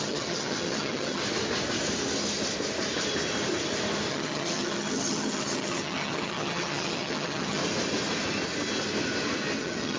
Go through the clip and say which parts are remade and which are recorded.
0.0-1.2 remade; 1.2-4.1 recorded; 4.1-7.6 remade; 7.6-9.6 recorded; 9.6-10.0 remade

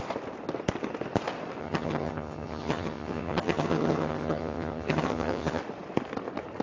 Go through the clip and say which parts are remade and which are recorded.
0.0-1.6 recorded; 1.6-5.6 remade; 5.6-6.6 recorded

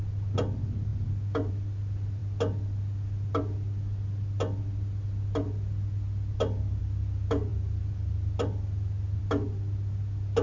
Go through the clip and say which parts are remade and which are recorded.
0.0-10.4 recorded

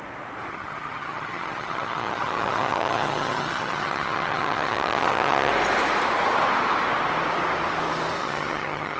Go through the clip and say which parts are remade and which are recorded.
0.0-0.5 recorded; 0.5-5.5 remade; 5.5-8.2 recorded; 8.2-9.0 remade

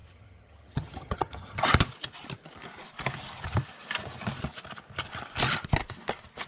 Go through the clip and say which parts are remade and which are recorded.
0.0-1.6 remade; 1.6-6.5 recorded

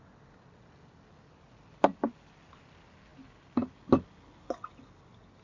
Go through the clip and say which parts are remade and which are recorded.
0.0-5.4 recorded

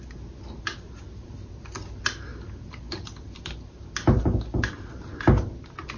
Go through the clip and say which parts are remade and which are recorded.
0.0-6.0 recorded